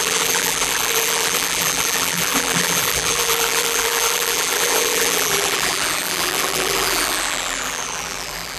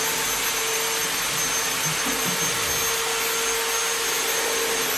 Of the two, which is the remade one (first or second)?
first